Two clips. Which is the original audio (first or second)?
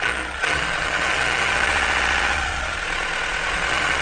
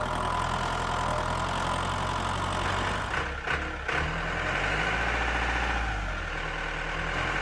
second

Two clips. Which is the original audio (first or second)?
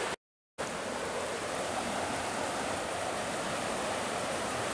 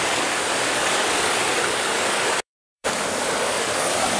first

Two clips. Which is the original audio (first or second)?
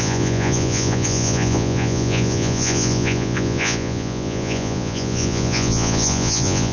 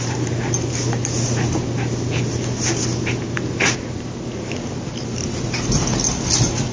second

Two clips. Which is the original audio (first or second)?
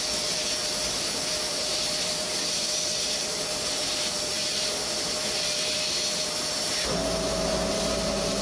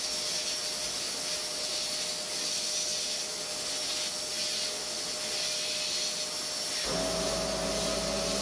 second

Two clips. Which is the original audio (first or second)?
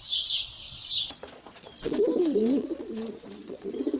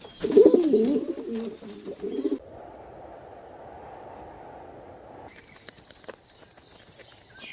second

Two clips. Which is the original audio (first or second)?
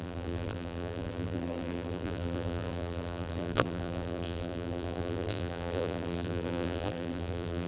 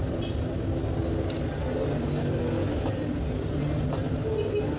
second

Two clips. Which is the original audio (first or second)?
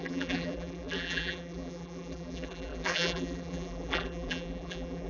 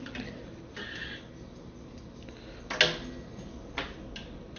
second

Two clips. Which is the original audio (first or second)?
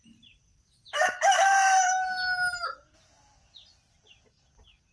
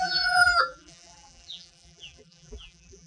first